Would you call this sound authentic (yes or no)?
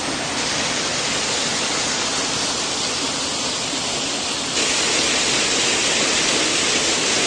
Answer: yes